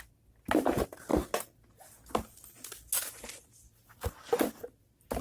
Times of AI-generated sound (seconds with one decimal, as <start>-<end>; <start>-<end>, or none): none